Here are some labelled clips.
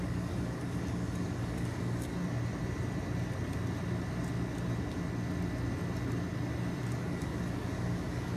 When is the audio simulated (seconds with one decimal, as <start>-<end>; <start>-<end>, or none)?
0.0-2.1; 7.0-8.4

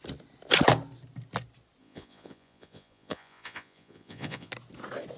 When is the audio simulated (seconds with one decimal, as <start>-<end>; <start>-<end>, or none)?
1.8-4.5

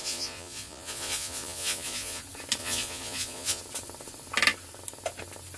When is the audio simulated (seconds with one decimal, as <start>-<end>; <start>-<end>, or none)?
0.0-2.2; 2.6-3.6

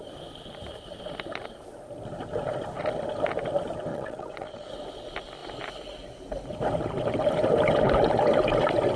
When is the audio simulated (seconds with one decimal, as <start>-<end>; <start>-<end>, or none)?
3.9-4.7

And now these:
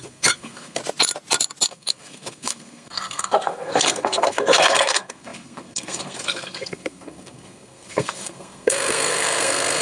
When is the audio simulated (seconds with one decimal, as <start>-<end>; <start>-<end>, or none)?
0.0-0.8; 1.7-9.8

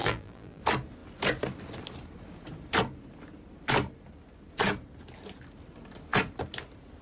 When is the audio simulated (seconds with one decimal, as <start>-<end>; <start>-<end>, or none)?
0.0-0.6